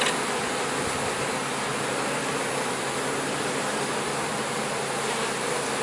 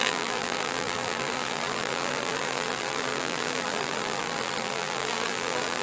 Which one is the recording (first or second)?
first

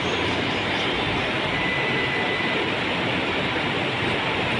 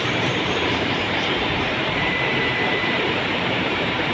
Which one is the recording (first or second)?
first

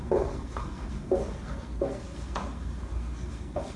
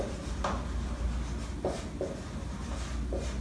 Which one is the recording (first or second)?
second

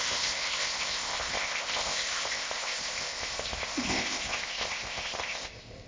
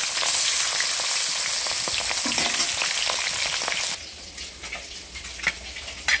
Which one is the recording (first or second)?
second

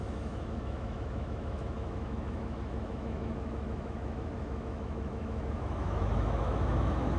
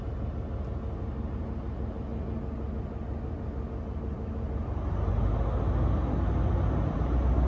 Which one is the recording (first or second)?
second